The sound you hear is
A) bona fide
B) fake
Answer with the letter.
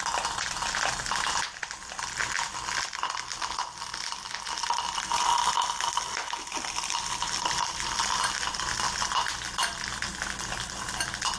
A